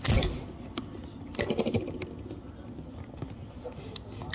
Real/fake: real